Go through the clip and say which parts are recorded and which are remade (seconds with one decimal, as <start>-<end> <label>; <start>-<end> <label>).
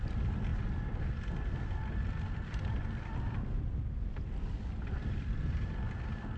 0.0-6.4 recorded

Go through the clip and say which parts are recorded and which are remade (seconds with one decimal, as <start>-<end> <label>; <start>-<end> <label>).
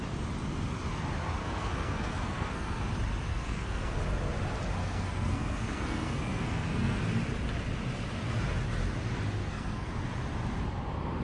0.0-1.4 recorded; 1.4-2.9 remade; 2.9-3.3 recorded; 3.3-4.0 remade; 4.0-4.8 recorded; 4.8-7.0 remade; 7.0-9.4 recorded; 9.4-9.9 remade; 9.9-11.2 recorded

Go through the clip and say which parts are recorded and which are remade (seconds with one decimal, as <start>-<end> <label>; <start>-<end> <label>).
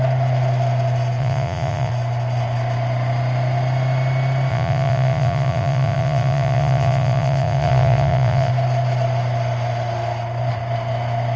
0.0-1.2 recorded; 1.2-1.9 remade; 1.9-4.5 recorded; 4.5-8.5 remade; 8.5-11.4 recorded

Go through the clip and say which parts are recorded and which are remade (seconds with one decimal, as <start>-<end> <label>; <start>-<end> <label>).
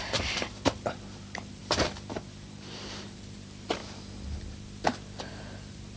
0.0-1.6 remade; 1.6-2.1 recorded; 2.1-3.8 remade; 3.8-5.3 recorded; 5.3-6.0 remade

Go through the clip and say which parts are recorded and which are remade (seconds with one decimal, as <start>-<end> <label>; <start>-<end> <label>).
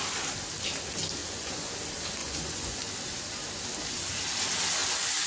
0.0-1.2 recorded; 1.2-1.7 remade; 1.7-2.2 recorded; 2.2-2.9 remade; 2.9-5.3 recorded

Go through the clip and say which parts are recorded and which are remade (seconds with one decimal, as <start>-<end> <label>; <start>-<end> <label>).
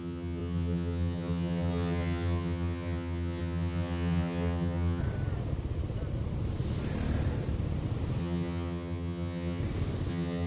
0.0-5.0 remade; 5.0-8.2 recorded; 8.2-9.6 remade; 9.6-10.1 recorded; 10.1-10.5 remade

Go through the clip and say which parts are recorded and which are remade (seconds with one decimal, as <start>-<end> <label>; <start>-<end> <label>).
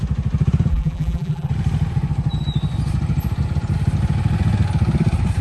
0.0-0.7 recorded; 0.7-1.5 remade; 1.5-5.4 recorded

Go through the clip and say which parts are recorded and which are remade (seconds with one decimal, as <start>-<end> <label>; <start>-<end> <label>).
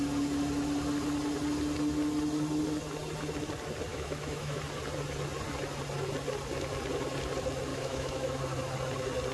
0.0-3.9 recorded; 3.9-4.6 remade; 4.6-7.7 recorded; 7.7-8.4 remade; 8.4-9.3 recorded